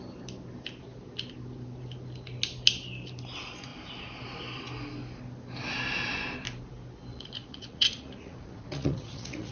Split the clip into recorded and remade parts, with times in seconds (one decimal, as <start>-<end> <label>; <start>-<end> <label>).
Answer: 0.0-7.1 recorded; 7.1-9.5 remade